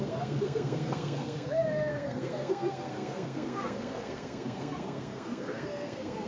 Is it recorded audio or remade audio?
remade